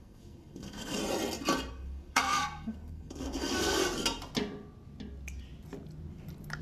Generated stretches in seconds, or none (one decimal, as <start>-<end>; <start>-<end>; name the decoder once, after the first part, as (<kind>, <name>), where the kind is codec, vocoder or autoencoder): 0.0-1.0 (codec, SNAC); 1.7-3.8